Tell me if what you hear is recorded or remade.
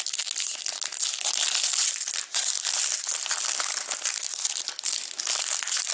recorded